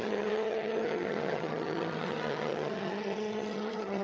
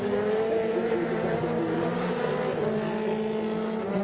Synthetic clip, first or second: first